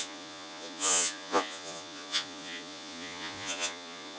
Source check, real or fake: fake